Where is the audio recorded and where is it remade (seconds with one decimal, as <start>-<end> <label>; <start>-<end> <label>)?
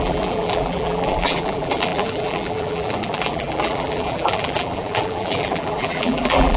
0.0-6.6 remade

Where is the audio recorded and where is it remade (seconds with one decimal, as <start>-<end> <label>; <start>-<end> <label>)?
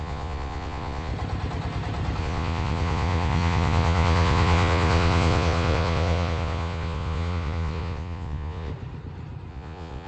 0.0-1.1 remade; 1.1-2.2 recorded; 2.2-8.7 remade; 8.7-9.5 recorded; 9.5-10.1 remade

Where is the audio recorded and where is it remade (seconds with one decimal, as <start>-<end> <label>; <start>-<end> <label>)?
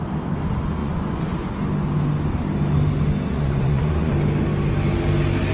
0.0-0.8 recorded; 0.8-1.5 remade; 1.5-3.3 recorded; 3.3-4.1 remade; 4.1-5.5 recorded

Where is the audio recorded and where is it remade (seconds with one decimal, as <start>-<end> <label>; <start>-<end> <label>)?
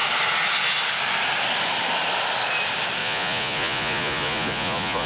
0.0-3.0 recorded; 3.0-5.1 remade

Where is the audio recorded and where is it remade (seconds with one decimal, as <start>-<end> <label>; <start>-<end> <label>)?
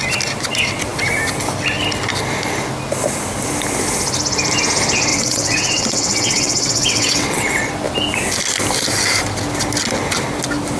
0.0-5.1 recorded; 5.1-7.7 remade; 7.7-10.8 recorded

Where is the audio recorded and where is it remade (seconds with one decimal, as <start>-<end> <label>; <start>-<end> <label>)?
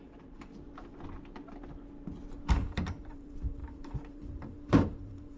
0.0-0.5 remade; 0.5-2.5 recorded; 2.5-5.4 remade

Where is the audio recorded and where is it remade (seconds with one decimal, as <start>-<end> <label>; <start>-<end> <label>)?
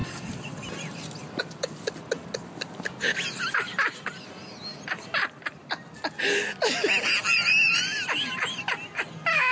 0.0-9.5 recorded